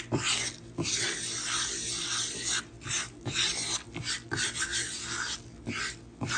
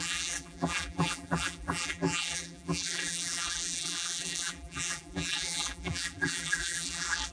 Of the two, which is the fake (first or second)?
second